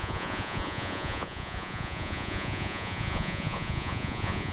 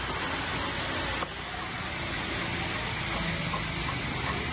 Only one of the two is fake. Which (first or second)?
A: first